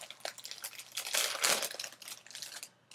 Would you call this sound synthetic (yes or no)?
no